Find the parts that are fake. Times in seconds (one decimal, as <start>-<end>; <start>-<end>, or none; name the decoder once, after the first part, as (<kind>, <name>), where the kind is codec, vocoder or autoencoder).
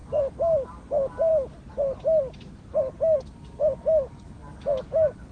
0.0-1.3 (codec, DAC); 3.2-5.3